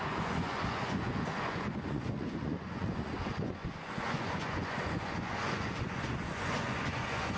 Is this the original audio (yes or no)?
no